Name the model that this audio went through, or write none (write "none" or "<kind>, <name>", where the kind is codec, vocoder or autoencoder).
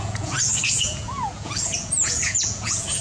vocoder, Vocos